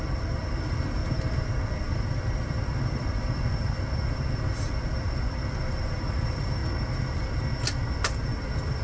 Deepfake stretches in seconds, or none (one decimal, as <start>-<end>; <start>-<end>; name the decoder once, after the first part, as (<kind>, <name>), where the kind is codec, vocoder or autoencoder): 0.0-6.6 (vocoder, BigVGAN v2); 8.2-8.8